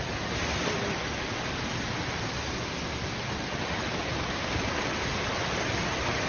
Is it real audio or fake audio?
real